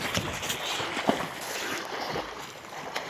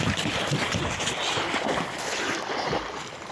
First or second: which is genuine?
first